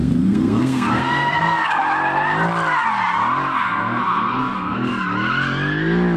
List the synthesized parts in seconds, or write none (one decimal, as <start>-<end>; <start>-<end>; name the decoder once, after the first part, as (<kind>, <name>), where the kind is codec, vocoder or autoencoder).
0.0-1.8 (codec, SNAC); 3.6-4.9